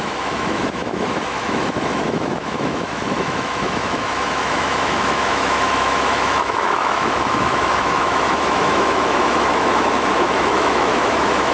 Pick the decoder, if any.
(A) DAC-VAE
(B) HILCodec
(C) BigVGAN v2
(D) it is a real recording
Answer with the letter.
A